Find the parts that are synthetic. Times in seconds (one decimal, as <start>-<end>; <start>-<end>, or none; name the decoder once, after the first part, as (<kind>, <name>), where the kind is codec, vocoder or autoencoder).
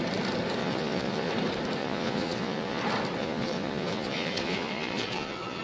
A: 0.6-1.3 (vocoder, Vocos); 1.8-2.8; 3.2-5.6